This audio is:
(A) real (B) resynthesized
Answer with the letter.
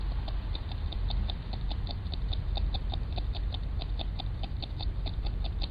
A